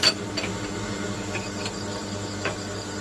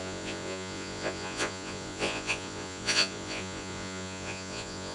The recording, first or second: first